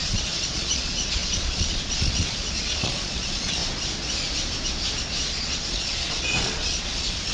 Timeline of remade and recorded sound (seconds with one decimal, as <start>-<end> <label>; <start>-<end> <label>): 0.0-3.6 remade; 3.6-5.2 recorded; 5.2-7.3 remade